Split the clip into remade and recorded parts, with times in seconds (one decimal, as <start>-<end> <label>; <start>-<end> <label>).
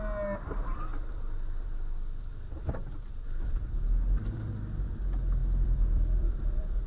0.0-0.9 recorded; 0.9-4.5 remade; 4.5-5.4 recorded; 5.4-6.9 remade